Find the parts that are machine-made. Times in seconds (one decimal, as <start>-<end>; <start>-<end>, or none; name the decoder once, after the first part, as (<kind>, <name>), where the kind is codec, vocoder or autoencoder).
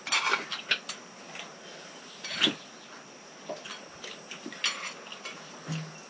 none